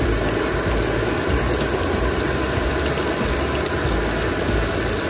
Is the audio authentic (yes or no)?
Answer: yes